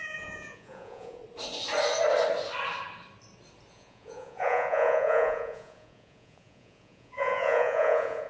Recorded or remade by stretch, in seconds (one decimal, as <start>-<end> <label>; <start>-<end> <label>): 0.0-1.2 remade; 1.2-3.7 recorded; 3.7-8.3 remade